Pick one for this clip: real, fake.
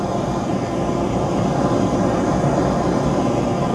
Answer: real